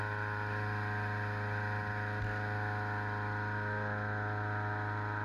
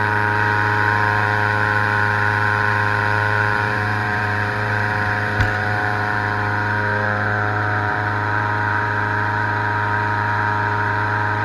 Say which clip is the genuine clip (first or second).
first